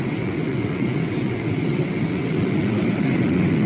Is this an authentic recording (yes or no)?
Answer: no